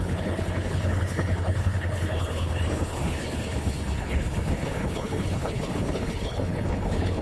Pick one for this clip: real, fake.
fake